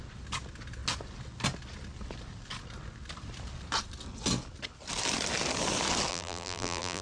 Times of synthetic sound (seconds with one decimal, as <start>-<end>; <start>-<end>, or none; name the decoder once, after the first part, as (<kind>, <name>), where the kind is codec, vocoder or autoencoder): 6.1-7.0 (vocoder, BigVGAN v2)